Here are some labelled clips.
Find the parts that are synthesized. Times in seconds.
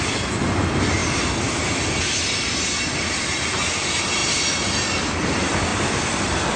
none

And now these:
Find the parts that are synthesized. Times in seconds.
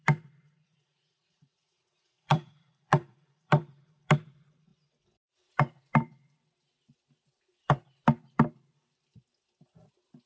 0.7-4.1 (vocoder, Vocos)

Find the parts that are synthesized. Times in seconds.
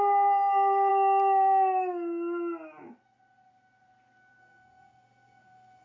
0.0-0.9 (codec, SNAC); 4.4-5.8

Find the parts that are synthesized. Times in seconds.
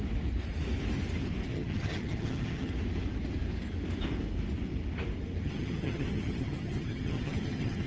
1.5-2.7 (vocoder, HiFi-GAN); 5.4-7.9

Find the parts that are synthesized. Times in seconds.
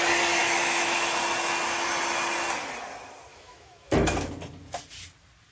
0.4-1.2 (autoencoder, DAC-VAE); 3.3-4.3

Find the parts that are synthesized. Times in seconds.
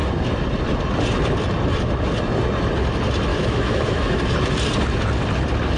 3.3-4.2 (autoencoder, DAC-VAE)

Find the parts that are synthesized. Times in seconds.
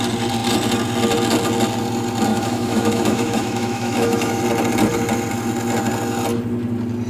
2.3-4.4 (autoencoder, DAC-VAE)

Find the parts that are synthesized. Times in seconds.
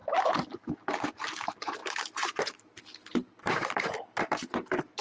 1.8-5.0 (vocoder, BigVGAN v2)